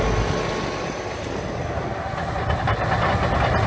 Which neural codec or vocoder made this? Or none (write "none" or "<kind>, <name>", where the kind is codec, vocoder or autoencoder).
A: none